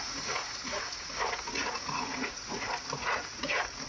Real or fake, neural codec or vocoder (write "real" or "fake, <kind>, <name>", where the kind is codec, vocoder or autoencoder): fake, vocoder, Vocos